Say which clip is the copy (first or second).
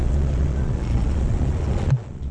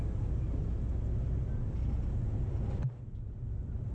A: first